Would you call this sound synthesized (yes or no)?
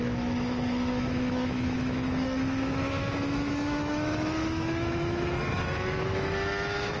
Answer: yes